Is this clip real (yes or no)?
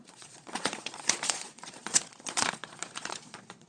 no